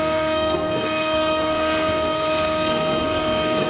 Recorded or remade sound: remade